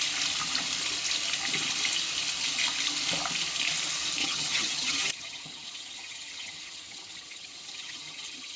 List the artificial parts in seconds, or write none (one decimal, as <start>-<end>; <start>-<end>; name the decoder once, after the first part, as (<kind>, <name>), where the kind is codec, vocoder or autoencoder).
4.2-8.6 (vocoder, HiFi-GAN)